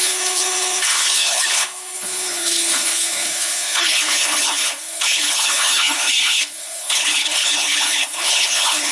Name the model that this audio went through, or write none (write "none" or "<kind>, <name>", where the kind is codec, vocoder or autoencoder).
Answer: codec, HILCodec